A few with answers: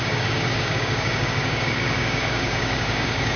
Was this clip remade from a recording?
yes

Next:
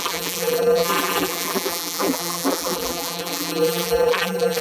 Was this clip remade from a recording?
yes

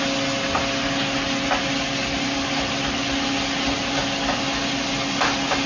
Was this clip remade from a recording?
no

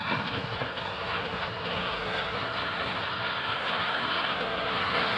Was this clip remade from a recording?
yes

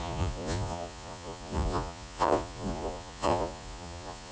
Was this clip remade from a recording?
yes